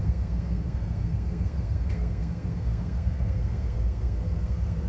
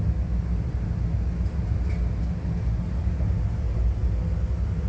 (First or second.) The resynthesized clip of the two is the first